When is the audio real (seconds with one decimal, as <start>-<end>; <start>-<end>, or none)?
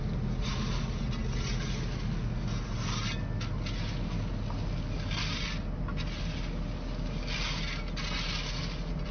0.0-9.1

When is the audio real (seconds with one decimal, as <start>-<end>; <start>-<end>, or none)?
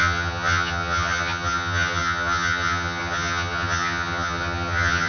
none